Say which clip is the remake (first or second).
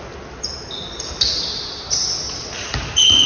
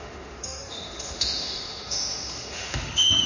second